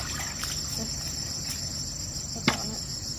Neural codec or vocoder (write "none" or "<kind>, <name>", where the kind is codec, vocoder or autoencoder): vocoder, BigVGAN v2